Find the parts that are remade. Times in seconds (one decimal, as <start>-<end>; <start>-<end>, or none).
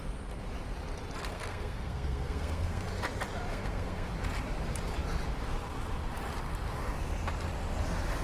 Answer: 1.3-2.8; 3.5-4.1